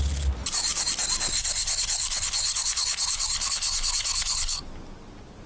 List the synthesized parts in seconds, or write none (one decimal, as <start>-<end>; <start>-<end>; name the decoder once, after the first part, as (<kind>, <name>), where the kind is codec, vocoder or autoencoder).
1.3-4.6 (codec, HILCodec)